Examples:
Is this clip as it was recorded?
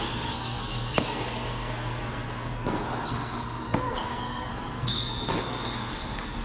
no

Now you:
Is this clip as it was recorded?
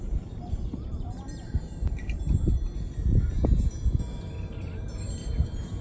no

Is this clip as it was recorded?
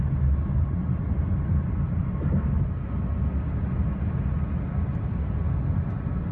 yes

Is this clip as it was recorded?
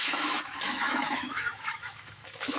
no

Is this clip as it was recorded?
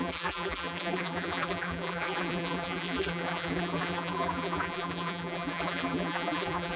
no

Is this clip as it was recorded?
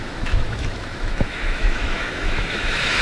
no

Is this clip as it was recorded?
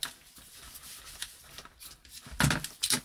yes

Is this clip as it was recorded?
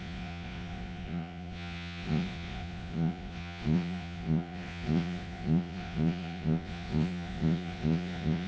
no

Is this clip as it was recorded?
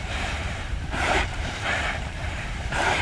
no